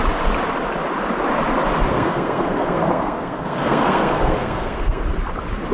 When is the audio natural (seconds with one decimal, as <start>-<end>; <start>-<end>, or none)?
0.0-1.9; 5.0-5.7